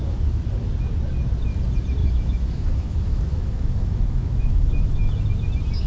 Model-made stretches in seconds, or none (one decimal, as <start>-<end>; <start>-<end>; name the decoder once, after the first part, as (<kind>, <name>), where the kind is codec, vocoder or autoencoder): 2.0-5.2 (autoencoder, DAC-VAE)